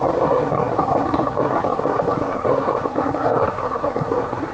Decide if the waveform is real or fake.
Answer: fake